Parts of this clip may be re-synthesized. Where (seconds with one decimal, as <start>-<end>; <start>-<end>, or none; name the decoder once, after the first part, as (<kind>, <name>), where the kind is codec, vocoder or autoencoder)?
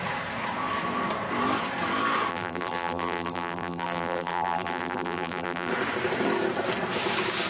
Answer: 2.3-5.7 (vocoder, BigVGAN v2)